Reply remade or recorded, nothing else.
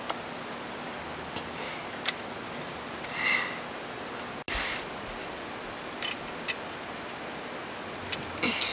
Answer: recorded